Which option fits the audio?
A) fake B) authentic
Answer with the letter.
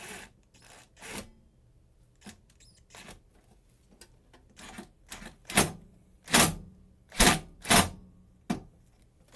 B